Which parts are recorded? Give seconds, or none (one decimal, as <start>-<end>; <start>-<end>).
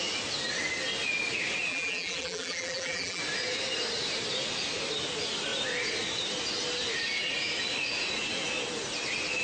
0.0-1.7; 3.2-9.4